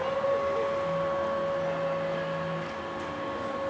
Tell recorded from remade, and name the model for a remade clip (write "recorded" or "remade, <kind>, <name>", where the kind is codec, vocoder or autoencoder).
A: recorded